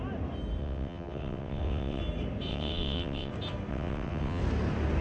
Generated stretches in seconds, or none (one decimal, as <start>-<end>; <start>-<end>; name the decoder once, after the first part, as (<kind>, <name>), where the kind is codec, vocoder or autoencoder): 0.6-2.0 (vocoder, WaveNeXt); 2.5-3.3; 3.7-4.4